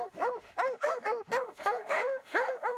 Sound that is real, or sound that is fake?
fake